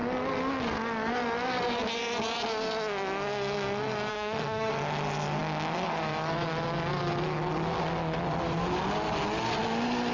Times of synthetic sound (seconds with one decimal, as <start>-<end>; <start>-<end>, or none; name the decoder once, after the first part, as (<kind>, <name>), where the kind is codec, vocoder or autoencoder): 4.1-4.7 (autoencoder, DAC-VAE)